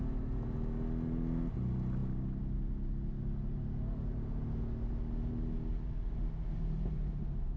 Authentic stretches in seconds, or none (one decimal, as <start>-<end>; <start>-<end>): 0.0-7.6